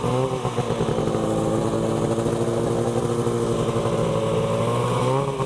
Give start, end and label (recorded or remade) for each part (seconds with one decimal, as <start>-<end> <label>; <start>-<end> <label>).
0.0-5.5 recorded